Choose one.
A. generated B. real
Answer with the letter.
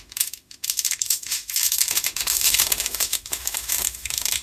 A